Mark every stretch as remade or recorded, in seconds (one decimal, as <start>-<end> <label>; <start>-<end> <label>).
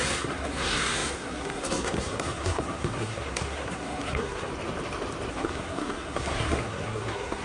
0.0-4.5 remade; 4.5-5.3 recorded; 5.3-7.4 remade